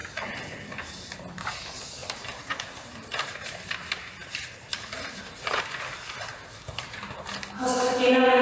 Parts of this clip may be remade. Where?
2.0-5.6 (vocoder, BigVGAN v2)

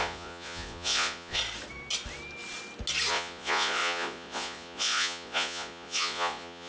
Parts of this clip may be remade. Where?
0.0-1.4 (vocoder, Vocos); 3.1-6.7

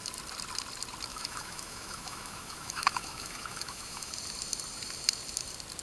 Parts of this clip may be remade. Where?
1.1-4.1 (autoencoder, DAC-VAE)